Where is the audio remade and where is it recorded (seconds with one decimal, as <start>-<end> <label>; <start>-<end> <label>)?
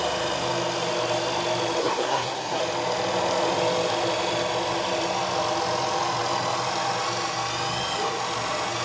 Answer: 0.0-1.8 recorded; 1.8-2.6 remade; 2.6-8.8 recorded